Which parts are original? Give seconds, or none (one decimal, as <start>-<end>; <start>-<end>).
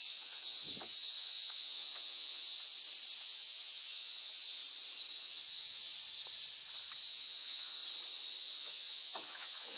2.7-3.2; 4.6-5.1; 5.9-7.1; 7.8-8.4